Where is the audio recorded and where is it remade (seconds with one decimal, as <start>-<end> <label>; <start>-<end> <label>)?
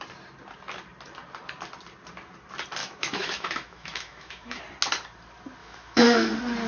0.0-2.8 recorded; 2.8-4.6 remade; 4.6-5.6 recorded; 5.6-6.3 remade; 6.3-6.7 recorded